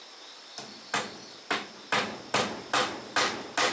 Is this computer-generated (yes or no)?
no